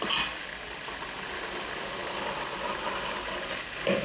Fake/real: real